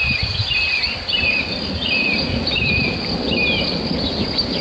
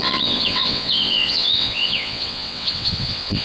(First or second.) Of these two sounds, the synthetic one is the second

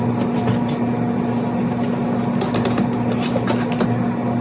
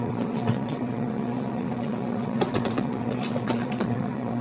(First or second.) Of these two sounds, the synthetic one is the second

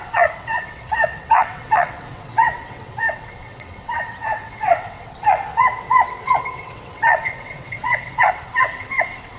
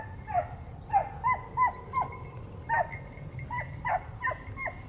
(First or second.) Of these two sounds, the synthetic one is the first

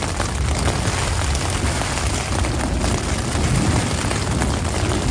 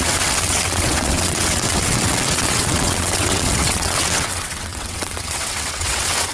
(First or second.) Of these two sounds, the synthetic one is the second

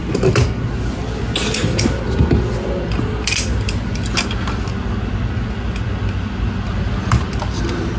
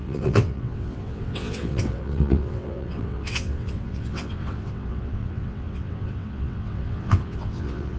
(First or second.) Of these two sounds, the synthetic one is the second